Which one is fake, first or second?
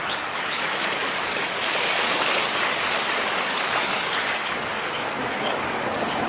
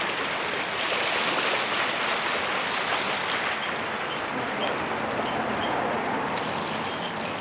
first